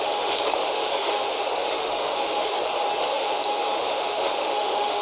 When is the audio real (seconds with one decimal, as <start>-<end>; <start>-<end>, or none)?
2.5-3.0